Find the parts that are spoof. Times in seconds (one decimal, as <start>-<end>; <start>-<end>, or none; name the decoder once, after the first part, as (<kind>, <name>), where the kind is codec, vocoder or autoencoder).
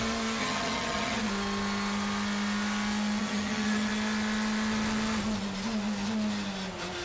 0.4-1.2 (vocoder, HiFi-GAN); 3.2-3.9